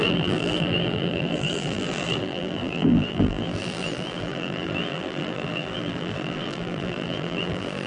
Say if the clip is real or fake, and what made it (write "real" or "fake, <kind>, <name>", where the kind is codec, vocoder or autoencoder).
fake, vocoder, BigVGAN v2